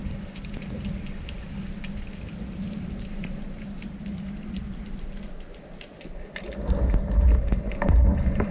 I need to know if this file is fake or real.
real